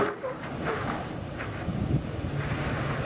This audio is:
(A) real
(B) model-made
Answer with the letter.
B